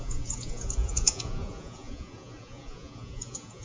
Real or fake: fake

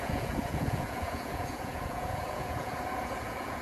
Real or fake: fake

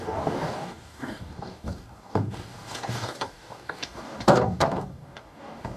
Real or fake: fake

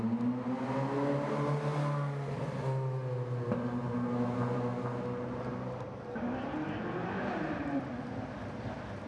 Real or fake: real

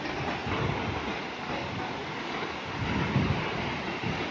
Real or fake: real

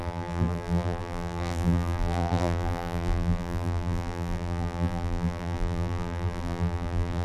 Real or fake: fake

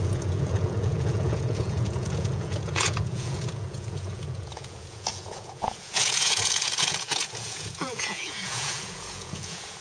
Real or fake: fake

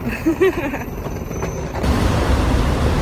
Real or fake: fake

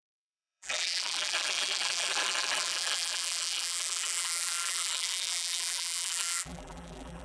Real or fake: fake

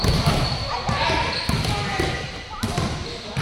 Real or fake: real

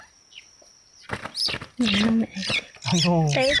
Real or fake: real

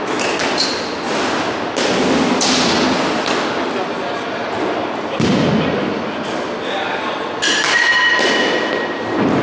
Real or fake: real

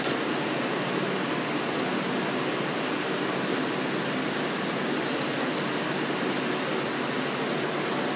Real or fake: real